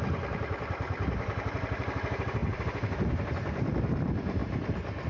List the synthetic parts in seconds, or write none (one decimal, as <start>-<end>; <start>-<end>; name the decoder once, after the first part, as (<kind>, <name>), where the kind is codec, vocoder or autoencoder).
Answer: 0.0-5.1 (vocoder, BigVGAN v2)